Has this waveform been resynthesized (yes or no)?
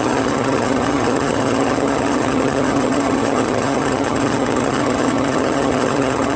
yes